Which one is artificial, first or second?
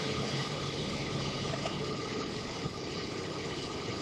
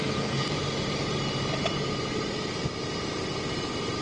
first